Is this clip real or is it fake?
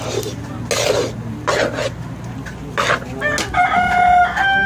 real